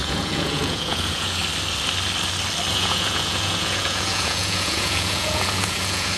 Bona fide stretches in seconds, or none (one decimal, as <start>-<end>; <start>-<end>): 1.4-2.7